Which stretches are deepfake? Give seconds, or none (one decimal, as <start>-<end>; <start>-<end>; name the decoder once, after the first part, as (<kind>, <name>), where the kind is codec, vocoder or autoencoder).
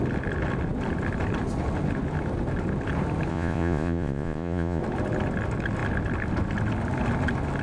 3.3-4.8 (vocoder, Vocos)